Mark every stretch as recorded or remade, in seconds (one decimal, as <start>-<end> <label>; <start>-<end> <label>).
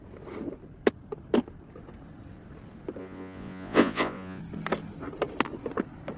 0.0-3.0 recorded; 3.0-4.4 remade; 4.4-6.2 recorded